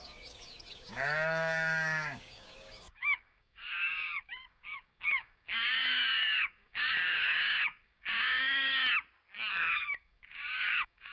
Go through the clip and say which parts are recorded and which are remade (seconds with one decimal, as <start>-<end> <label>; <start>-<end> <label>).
0.0-8.8 remade; 8.8-9.5 recorded; 9.5-11.1 remade